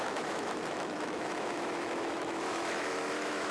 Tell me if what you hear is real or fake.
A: fake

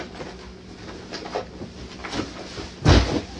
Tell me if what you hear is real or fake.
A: real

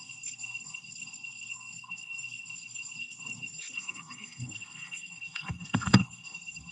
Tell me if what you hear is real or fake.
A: fake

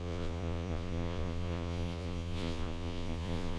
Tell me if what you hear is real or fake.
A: fake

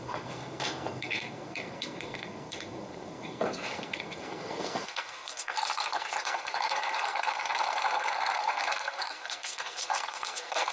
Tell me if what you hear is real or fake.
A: fake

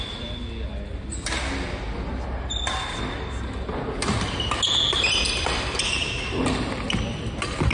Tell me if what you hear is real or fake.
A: real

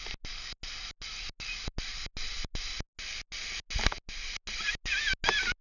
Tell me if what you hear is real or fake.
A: real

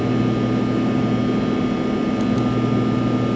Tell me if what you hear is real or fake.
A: real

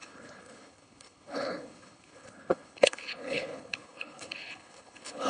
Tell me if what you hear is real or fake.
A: fake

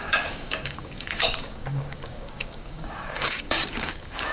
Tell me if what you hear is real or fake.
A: fake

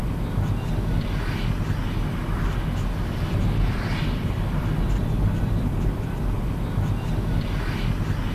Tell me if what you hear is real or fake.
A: real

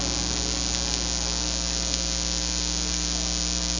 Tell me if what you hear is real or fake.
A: real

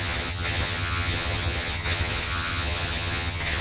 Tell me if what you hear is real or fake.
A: fake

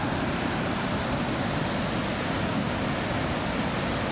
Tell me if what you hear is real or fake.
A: real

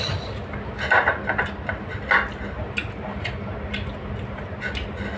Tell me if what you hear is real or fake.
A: real